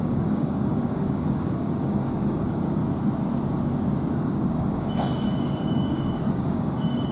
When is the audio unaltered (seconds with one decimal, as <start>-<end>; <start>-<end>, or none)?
2.8-4.1